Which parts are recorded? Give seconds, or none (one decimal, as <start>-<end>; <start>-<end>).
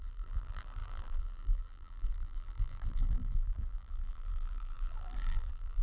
none